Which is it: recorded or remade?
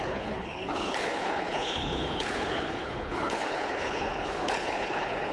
remade